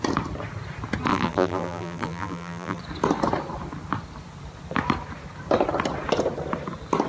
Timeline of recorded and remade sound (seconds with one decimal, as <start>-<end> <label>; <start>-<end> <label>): 0.0-1.1 recorded; 1.1-2.8 remade; 2.8-7.1 recorded